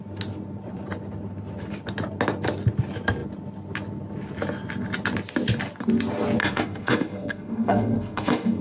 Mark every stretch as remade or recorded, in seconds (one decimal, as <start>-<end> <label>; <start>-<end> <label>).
0.0-6.4 recorded; 6.4-8.6 remade